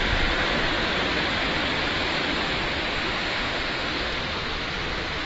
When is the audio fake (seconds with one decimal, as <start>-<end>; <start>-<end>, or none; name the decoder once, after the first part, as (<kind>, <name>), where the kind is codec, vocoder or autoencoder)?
3.0-4.1 (autoencoder, DAC-VAE)